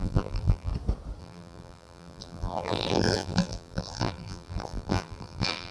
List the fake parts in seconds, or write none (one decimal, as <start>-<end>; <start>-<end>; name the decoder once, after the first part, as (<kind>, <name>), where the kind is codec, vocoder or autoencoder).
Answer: 0.0-0.7 (vocoder, BigVGAN v2); 1.2-5.7